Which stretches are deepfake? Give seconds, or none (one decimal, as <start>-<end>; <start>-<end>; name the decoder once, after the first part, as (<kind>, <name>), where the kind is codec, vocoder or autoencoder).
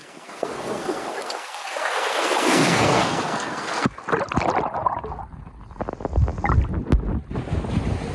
0.0-4.0 (codec, SNAC)